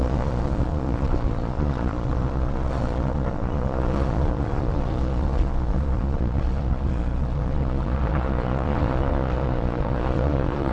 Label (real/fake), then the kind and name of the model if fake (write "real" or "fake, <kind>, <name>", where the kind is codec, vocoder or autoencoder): fake, vocoder, Vocos